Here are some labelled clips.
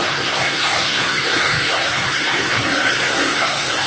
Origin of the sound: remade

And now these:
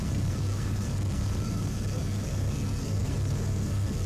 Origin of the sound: remade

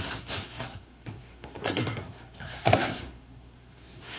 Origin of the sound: remade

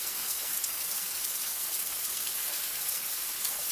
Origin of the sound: remade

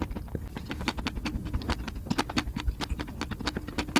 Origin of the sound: recorded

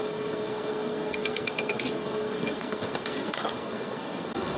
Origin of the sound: remade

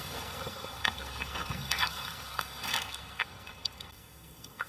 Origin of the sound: remade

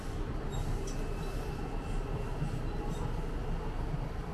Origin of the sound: recorded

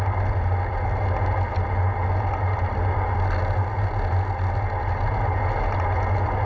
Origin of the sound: recorded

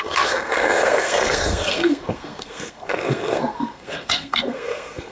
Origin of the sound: remade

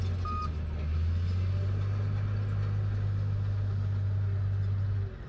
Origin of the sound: recorded